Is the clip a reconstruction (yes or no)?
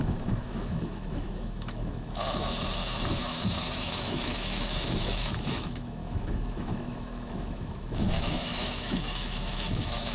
yes